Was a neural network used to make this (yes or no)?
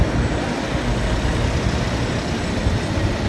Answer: no